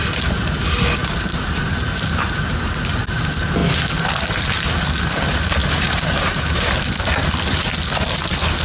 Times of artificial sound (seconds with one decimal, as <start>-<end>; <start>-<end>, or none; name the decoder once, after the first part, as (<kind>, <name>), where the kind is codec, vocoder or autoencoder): 1.0-3.2 (vocoder, BigVGAN v2); 5.6-6.7